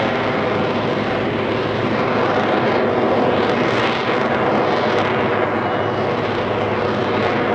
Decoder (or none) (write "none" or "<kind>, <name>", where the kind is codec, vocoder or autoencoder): none